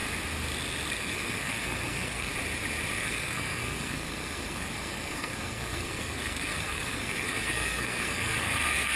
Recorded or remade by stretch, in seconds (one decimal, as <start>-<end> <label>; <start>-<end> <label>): 0.0-1.0 recorded; 1.0-2.3 remade; 2.3-3.0 recorded; 3.0-9.0 remade